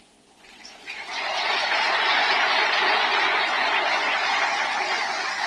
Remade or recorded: remade